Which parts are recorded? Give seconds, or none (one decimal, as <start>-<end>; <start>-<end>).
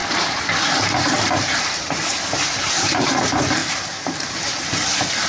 3.2-3.6; 4.6-5.3